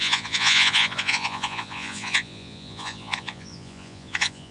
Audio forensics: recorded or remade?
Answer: remade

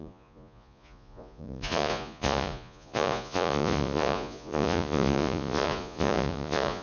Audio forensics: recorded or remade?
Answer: remade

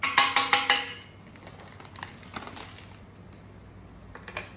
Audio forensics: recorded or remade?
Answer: recorded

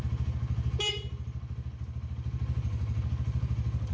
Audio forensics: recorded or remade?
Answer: recorded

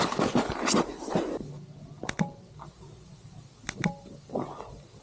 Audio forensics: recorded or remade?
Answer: recorded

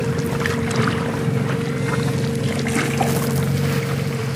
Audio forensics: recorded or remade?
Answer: recorded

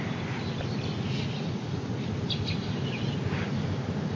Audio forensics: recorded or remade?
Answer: recorded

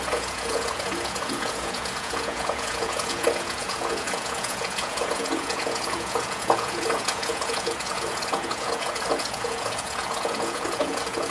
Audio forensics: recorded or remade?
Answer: remade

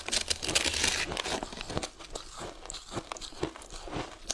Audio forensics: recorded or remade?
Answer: recorded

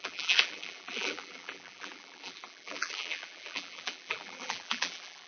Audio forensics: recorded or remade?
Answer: remade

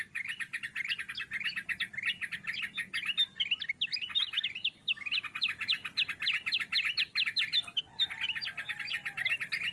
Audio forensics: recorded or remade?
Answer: recorded